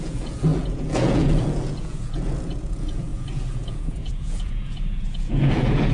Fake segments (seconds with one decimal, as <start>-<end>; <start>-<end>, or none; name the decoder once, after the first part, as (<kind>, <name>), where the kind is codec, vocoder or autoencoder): 0.0-5.9 (vocoder, Vocos)